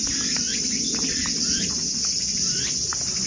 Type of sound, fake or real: real